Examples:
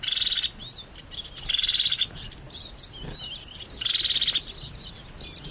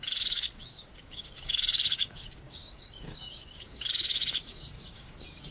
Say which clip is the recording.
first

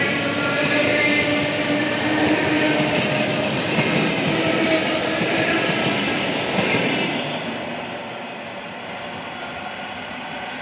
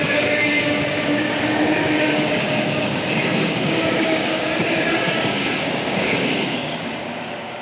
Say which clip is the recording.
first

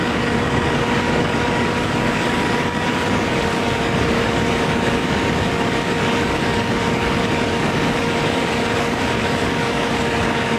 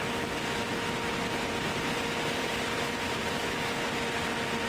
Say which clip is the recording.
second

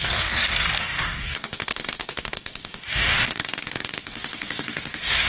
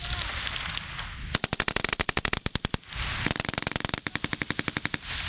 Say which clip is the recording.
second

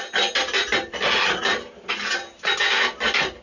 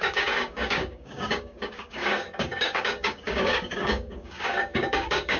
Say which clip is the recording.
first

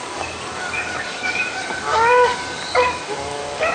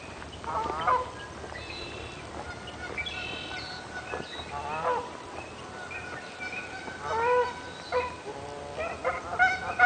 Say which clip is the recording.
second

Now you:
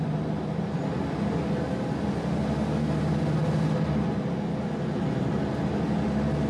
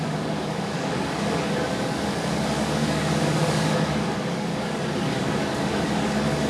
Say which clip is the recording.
first